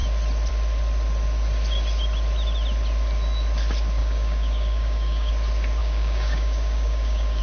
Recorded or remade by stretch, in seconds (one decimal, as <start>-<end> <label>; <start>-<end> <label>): 0.0-4.0 recorded; 4.0-5.3 remade; 5.3-5.8 recorded; 5.8-7.4 remade